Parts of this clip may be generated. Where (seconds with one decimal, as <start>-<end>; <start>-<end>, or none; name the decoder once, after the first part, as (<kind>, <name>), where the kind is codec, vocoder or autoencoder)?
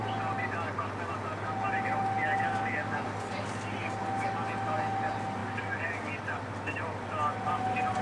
none